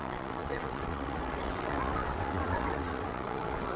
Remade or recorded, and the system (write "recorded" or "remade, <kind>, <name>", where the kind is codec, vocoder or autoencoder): remade, vocoder, WaveNeXt